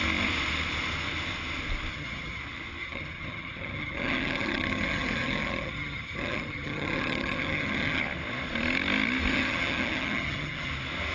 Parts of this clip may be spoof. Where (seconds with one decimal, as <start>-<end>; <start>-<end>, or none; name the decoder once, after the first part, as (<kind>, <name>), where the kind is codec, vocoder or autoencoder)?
1.9-2.4 (vocoder, HiFi-GAN); 2.8-8.0; 9.3-10.7